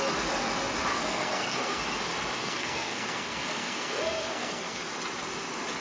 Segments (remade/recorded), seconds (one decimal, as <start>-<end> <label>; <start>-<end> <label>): 0.0-0.9 recorded; 0.9-1.8 remade; 1.8-2.4 recorded; 2.4-4.9 remade; 4.9-5.8 recorded